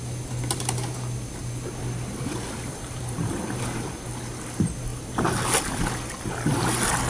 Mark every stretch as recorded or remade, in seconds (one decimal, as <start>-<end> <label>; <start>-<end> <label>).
0.0-1.8 recorded; 1.8-3.6 remade; 3.6-4.9 recorded; 4.9-5.8 remade; 5.8-7.1 recorded